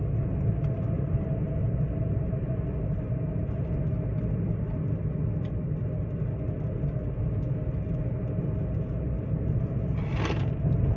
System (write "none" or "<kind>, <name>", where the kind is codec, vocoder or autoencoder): none